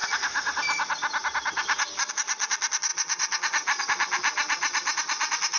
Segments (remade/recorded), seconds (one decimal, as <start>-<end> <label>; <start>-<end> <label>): 0.0-5.6 recorded